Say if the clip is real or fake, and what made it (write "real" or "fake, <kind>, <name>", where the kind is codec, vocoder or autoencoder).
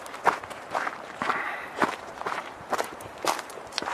fake, vocoder, BigVGAN v2